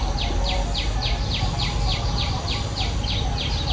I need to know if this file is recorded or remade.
recorded